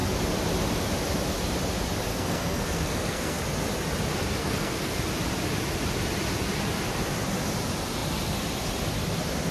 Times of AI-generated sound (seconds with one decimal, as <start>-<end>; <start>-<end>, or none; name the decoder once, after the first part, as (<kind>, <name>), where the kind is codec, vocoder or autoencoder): 2.1-3.4 (codec, SNAC); 4.4-5.0